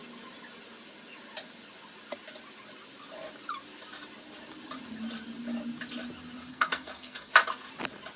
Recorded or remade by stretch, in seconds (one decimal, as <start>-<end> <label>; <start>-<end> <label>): 0.0-6.5 recorded; 6.5-7.3 remade; 7.3-8.2 recorded